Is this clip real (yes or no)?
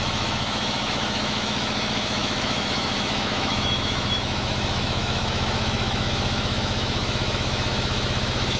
no